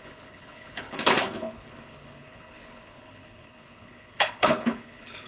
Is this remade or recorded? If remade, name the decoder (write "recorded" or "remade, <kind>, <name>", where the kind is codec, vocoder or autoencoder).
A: remade, codec, HILCodec